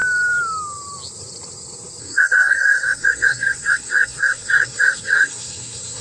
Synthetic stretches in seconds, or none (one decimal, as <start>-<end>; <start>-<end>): 2.0-6.0